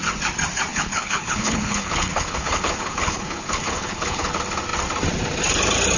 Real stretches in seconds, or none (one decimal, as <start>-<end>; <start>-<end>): 0.0-0.7; 4.3-6.0